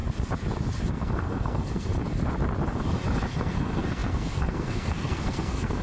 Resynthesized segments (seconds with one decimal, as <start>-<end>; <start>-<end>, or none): 0.9-1.9; 3.3-5.8